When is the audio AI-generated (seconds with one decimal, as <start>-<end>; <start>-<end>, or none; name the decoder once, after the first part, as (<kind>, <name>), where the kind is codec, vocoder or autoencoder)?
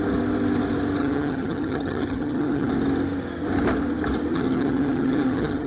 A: 1.0-2.7 (vocoder, HiFi-GAN); 4.3-5.7